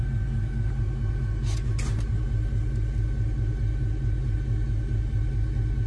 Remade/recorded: recorded